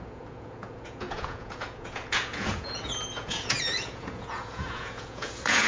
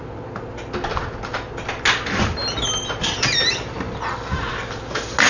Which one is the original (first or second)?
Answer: second